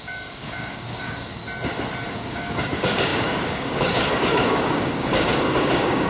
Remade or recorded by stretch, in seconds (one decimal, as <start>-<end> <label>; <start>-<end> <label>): 0.0-1.4 remade; 1.4-2.1 recorded; 2.1-6.1 remade